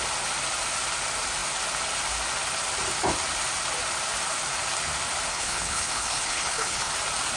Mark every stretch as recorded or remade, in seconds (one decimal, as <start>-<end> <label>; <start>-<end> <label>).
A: 0.0-5.3 recorded; 5.3-6.9 remade; 6.9-7.4 recorded